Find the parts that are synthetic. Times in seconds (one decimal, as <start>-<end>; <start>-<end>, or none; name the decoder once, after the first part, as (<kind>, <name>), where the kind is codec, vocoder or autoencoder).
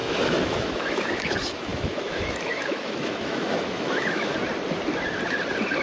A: 0.0-4.3 (autoencoder, DAC-VAE)